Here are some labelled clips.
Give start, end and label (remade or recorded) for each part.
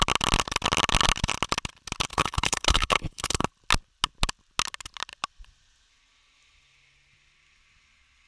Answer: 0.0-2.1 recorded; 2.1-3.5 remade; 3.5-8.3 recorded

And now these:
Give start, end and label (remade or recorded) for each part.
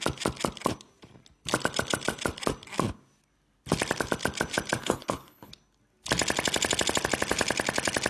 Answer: 0.0-4.8 recorded; 4.8-5.5 remade; 5.5-8.1 recorded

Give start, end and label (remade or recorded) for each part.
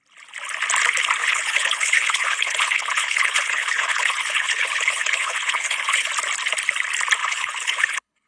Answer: 0.0-1.2 recorded; 1.2-6.1 remade; 6.1-7.2 recorded; 7.2-8.3 remade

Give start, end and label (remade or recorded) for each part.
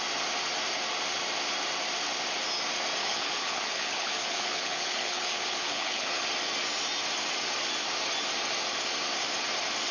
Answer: 0.0-3.0 recorded; 3.0-6.2 remade; 6.2-9.9 recorded